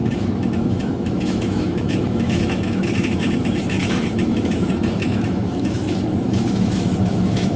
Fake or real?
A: fake